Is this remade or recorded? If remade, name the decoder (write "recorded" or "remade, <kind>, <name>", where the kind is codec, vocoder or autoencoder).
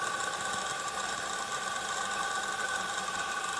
recorded